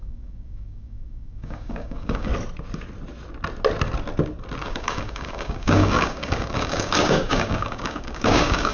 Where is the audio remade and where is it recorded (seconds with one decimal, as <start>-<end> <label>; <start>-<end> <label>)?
0.0-2.3 remade; 2.3-4.6 recorded; 4.6-8.7 remade